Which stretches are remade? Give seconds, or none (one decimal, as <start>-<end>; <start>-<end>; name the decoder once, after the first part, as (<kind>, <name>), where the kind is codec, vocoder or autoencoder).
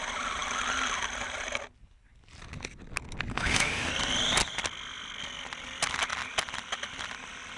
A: 3.3-3.9 (autoencoder, DAC-VAE)